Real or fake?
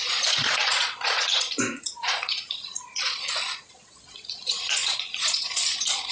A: fake